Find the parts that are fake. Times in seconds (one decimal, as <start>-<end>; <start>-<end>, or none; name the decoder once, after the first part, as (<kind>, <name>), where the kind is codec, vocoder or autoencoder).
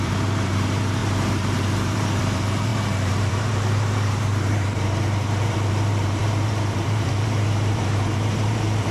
0.0-8.9 (vocoder, BigVGAN v2)